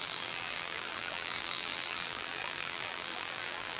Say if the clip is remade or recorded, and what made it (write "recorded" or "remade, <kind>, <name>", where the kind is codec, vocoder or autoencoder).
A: remade, vocoder, BigVGAN v2